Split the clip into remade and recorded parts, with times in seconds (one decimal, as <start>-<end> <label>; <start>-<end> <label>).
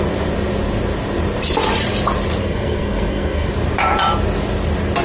0.0-2.4 recorded; 2.4-3.5 remade; 3.5-5.0 recorded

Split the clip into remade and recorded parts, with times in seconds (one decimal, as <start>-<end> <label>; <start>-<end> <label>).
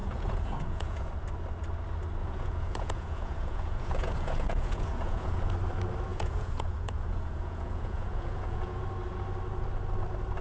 0.0-1.1 remade; 1.1-2.2 recorded; 2.2-5.5 remade; 5.5-6.1 recorded; 6.1-8.8 remade; 8.8-10.4 recorded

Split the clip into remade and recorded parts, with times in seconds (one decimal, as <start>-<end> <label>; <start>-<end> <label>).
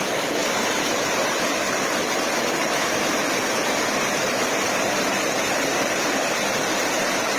0.0-7.4 recorded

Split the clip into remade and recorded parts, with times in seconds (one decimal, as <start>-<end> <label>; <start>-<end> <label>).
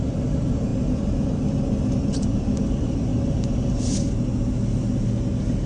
0.0-5.7 recorded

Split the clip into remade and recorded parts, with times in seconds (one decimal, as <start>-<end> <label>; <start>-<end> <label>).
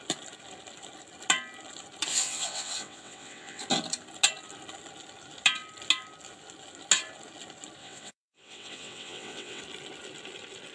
0.0-2.1 recorded; 2.1-3.6 remade; 3.6-7.8 recorded; 7.8-9.6 remade; 9.6-10.7 recorded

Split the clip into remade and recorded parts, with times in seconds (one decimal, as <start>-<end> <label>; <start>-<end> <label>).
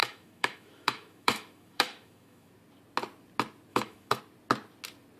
0.0-2.5 remade; 2.5-3.7 recorded; 3.7-4.2 remade; 4.2-5.2 recorded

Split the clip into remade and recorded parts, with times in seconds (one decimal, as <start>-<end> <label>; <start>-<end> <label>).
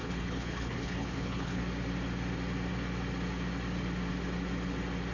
0.0-1.6 remade; 1.6-5.1 recorded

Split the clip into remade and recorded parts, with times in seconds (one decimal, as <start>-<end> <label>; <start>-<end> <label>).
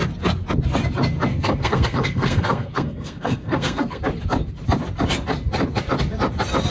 0.0-1.3 recorded; 1.3-4.0 remade; 4.0-6.7 recorded